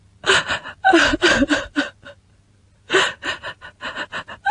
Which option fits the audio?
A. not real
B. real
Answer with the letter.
B